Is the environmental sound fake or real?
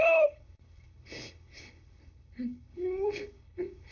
fake